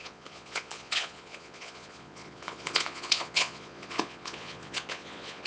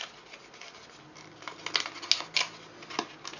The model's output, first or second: first